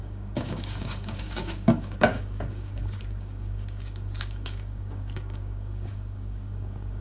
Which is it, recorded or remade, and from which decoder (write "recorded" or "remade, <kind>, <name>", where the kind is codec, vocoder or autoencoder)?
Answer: remade, codec, DAC